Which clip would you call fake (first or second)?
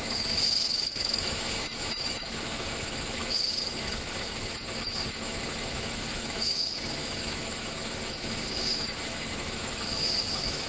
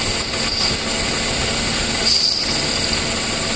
first